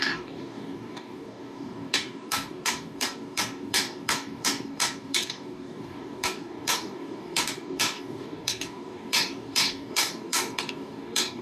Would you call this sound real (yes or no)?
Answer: no